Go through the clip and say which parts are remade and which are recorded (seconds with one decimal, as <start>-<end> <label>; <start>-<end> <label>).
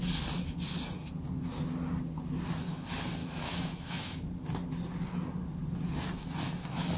0.0-3.2 recorded; 3.2-4.2 remade; 4.2-7.0 recorded